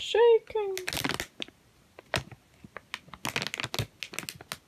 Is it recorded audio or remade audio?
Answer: recorded